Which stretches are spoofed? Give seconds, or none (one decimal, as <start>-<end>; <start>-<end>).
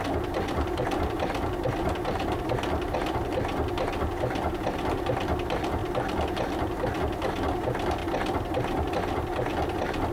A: none